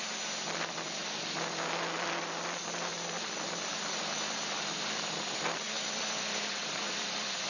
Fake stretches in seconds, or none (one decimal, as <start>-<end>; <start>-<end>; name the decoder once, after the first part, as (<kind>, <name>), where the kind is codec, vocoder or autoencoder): 0.6-1.0 (vocoder, BigVGAN v2); 2.0-7.5